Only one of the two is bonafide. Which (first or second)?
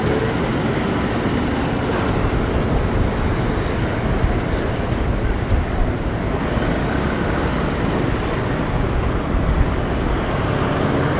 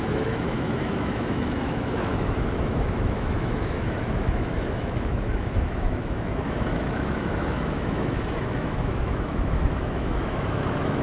first